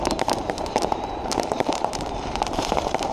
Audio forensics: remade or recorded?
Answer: remade